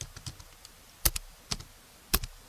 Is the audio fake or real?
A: real